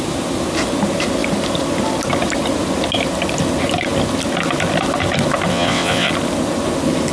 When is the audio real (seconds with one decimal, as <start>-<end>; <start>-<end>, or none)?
0.0-5.5; 6.1-7.1